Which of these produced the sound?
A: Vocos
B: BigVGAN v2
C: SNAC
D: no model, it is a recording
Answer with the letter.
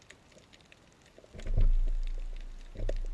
D